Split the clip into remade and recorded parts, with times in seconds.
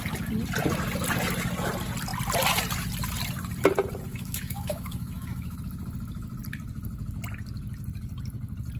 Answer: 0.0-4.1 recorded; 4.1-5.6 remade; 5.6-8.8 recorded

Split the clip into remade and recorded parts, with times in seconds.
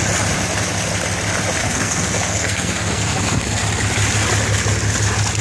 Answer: 0.0-1.6 recorded; 1.6-3.6 remade; 3.6-5.4 recorded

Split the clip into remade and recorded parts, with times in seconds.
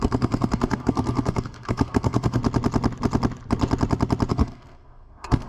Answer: 0.0-2.4 remade; 2.4-4.3 recorded; 4.3-5.5 remade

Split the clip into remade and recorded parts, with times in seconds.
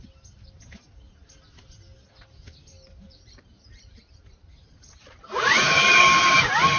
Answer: 0.0-2.5 recorded; 2.5-6.3 remade; 6.3-6.8 recorded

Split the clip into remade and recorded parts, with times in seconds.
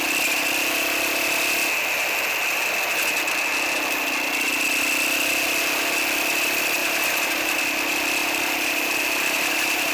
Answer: 0.0-6.8 recorded; 6.8-7.6 remade; 7.6-8.2 recorded; 8.2-9.9 remade